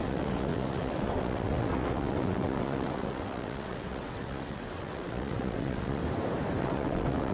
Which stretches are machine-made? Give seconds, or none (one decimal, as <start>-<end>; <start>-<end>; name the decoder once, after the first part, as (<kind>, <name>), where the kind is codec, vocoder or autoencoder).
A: 0.0-6.0 (vocoder, WaveNeXt); 6.6-7.3